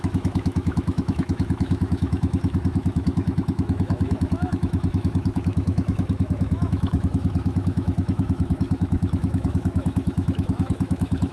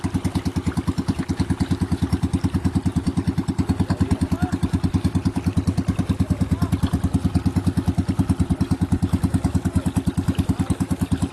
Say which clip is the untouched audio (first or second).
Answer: second